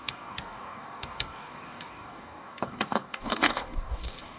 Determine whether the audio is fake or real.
fake